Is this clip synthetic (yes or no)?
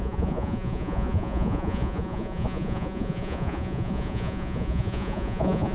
yes